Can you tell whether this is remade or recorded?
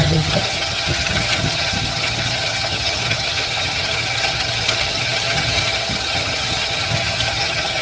remade